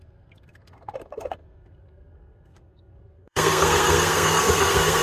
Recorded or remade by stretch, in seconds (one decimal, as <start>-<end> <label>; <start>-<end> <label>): 0.0-5.0 remade